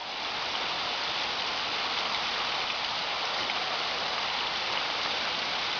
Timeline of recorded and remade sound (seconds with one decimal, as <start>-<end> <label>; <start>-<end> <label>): 0.0-2.9 recorded; 2.9-5.8 remade